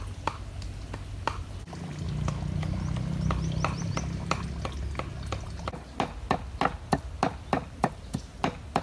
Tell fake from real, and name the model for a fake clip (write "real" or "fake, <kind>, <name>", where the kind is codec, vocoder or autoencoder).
real